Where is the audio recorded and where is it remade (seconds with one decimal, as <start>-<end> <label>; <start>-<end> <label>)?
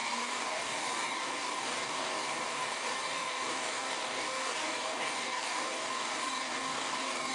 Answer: 0.0-7.3 remade